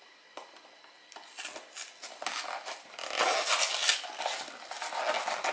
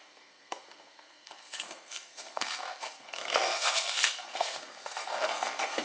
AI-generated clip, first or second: second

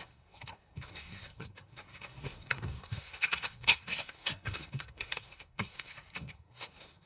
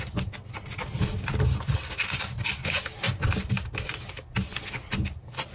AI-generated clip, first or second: first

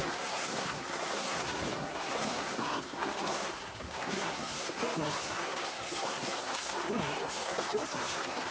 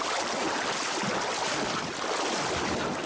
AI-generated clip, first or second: first